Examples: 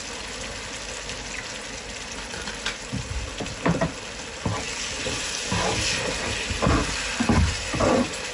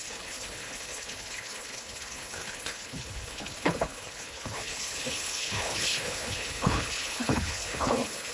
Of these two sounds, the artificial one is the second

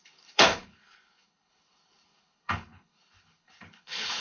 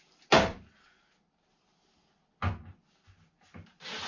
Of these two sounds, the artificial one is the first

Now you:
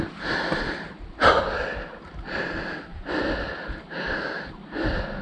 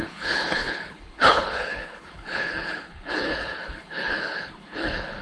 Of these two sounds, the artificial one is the second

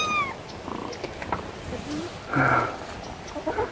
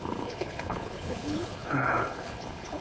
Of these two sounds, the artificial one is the second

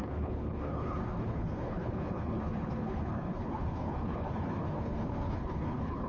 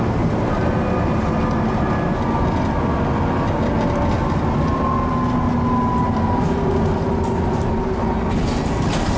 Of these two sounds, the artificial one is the first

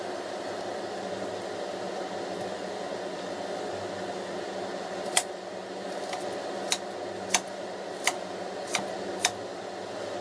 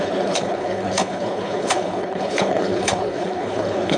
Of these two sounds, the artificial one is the second